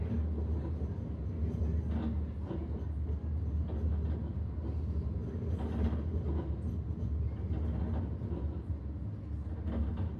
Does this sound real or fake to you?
real